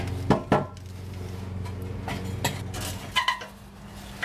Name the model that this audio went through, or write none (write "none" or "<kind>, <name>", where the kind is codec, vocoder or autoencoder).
none